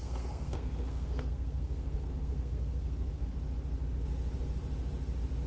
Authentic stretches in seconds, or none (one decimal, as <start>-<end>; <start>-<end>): 3.3-5.5